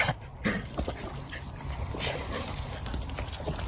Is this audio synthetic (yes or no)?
no